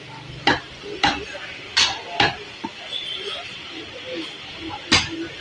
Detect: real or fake real